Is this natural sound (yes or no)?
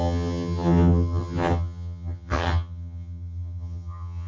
no